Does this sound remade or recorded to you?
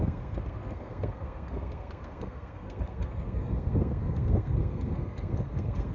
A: remade